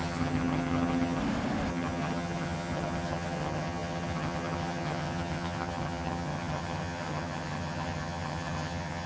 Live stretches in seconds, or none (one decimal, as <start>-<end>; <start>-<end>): 1.2-1.7